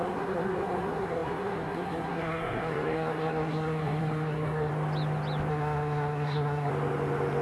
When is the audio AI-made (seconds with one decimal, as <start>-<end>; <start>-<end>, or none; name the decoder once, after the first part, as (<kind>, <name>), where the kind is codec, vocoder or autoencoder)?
0.0-4.7 (codec, SNAC); 5.5-6.7